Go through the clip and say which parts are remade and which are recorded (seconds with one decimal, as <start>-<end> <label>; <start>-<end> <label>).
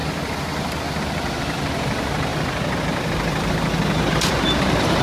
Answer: 0.0-1.0 recorded; 1.0-5.0 remade